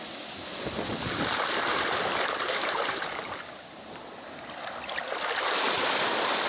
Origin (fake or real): real